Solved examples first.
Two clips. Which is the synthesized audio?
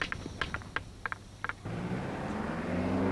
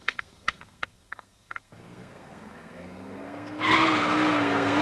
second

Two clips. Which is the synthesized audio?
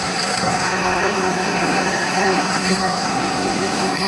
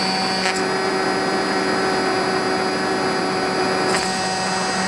first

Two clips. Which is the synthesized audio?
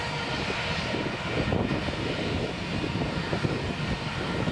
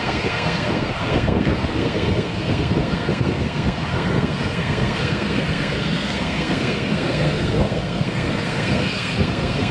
second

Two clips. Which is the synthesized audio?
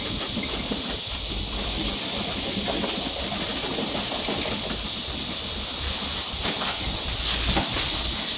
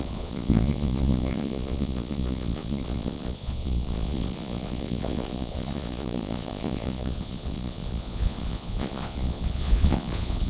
second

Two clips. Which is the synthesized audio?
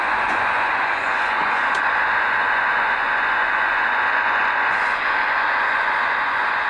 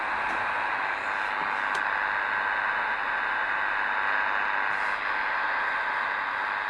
first